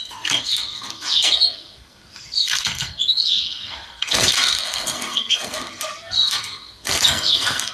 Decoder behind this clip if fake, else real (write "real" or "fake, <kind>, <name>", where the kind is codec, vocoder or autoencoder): fake, codec, SNAC